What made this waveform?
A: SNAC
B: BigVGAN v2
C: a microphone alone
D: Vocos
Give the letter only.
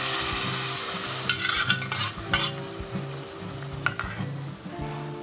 C